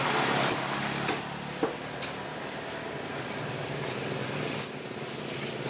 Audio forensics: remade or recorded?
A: recorded